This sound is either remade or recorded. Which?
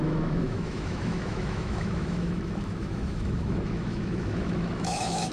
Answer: remade